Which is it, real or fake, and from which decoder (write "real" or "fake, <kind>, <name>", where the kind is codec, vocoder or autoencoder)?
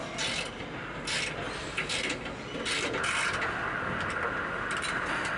real